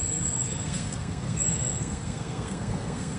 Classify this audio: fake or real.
fake